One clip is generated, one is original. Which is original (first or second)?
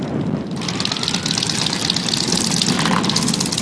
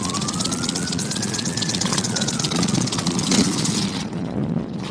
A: first